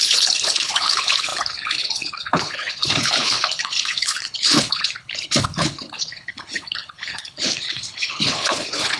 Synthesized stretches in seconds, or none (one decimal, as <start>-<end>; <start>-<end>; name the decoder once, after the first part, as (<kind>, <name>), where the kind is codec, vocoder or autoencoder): 0.0-9.0 (codec, HILCodec)